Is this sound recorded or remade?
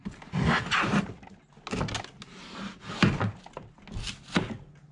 recorded